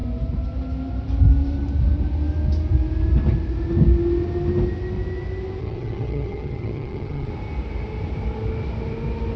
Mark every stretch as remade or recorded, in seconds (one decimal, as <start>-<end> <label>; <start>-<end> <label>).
0.0-5.6 recorded; 5.6-7.3 remade; 7.3-9.4 recorded